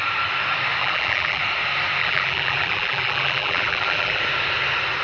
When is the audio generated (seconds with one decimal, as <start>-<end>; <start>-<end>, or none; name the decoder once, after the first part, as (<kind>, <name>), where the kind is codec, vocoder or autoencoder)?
0.8-1.4 (vocoder, BigVGAN v2); 2.0-4.2